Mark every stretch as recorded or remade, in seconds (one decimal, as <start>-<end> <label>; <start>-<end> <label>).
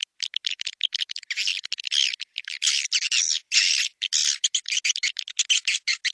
0.0-6.1 recorded